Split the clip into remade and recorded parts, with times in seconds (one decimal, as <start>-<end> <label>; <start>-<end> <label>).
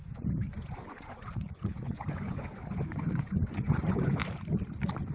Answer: 0.0-4.2 remade; 4.2-5.1 recorded